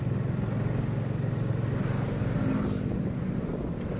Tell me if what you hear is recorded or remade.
recorded